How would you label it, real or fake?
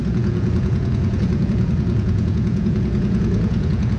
fake